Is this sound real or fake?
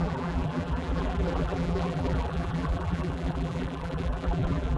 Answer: fake